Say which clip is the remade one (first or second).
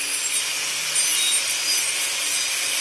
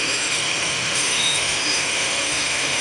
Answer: second